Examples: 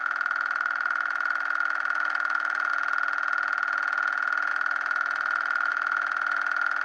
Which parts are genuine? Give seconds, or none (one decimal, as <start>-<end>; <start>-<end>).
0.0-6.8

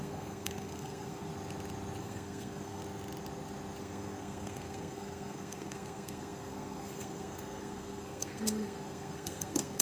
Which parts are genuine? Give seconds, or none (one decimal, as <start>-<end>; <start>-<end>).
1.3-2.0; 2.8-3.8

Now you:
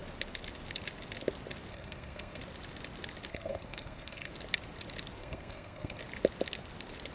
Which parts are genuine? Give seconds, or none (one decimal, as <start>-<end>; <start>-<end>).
0.0-1.7; 2.4-3.3; 4.3-5.2; 6.0-7.1

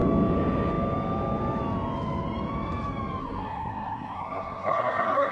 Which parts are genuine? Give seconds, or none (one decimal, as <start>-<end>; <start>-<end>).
0.0-3.2

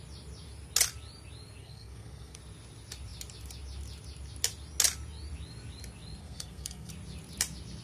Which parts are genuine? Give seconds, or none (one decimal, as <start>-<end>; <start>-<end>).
0.0-1.6; 2.4-6.2; 6.9-7.8

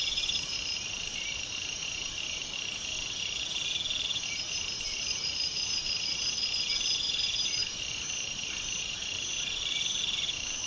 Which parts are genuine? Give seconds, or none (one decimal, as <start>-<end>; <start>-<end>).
2.4-4.0

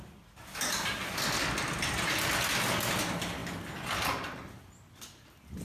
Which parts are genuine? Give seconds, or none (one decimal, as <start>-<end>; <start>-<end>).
0.0-5.6